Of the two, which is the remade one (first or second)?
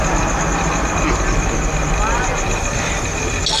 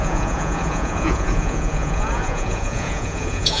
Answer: second